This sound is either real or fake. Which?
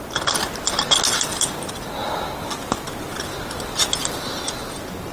real